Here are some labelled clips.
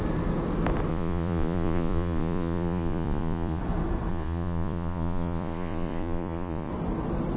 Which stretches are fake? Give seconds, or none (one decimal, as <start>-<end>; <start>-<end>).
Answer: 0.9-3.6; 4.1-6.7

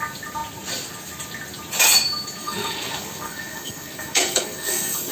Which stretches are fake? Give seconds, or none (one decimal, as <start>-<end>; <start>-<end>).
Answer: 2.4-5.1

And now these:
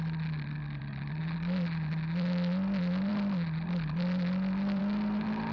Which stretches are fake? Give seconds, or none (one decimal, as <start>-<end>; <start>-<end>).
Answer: none